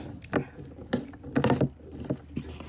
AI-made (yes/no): no